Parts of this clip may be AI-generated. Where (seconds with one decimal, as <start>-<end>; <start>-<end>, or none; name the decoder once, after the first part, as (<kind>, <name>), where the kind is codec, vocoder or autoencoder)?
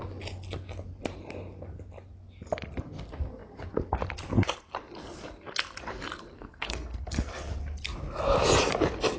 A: 6.3-7.3 (codec, SNAC)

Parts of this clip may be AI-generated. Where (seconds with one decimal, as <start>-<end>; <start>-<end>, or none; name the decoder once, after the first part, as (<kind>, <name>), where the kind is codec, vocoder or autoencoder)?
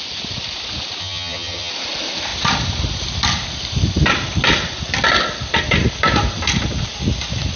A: 1.0-1.7 (vocoder, HiFi-GAN)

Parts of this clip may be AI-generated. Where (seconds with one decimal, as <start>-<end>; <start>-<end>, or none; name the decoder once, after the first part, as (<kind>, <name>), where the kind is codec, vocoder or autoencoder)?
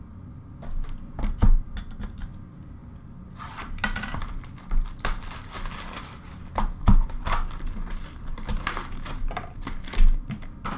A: none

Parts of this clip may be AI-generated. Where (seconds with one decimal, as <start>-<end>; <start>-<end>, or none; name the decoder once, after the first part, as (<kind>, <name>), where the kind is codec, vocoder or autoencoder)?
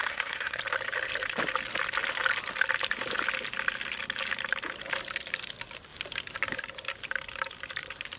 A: 0.0-0.6 (codec, SNAC)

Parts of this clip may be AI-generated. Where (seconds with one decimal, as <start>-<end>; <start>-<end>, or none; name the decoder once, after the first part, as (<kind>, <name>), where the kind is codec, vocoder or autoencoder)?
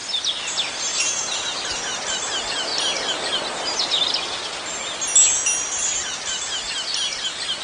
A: none